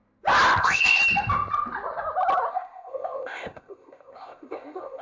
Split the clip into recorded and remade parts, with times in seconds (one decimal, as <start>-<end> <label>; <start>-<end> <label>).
0.0-0.6 recorded; 0.6-1.0 remade; 1.0-2.5 recorded; 2.5-5.0 remade